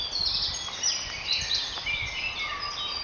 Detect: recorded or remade recorded